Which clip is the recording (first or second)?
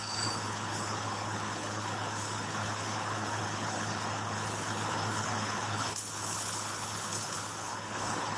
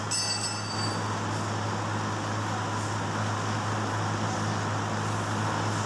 second